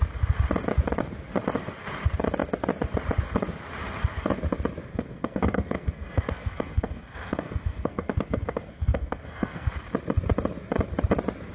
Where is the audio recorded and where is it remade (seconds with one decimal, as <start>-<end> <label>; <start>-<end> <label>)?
0.0-4.9 recorded; 4.9-9.7 remade; 9.7-11.5 recorded